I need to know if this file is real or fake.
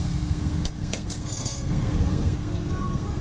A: fake